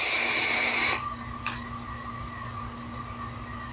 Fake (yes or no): no